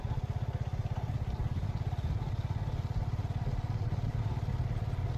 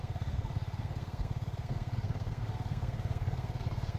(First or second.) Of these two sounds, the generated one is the second